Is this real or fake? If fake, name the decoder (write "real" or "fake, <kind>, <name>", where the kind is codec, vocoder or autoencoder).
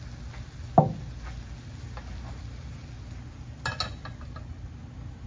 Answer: real